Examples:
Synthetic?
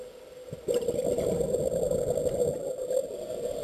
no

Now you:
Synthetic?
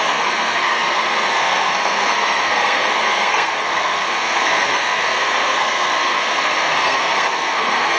yes